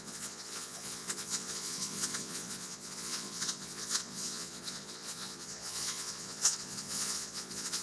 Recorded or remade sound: remade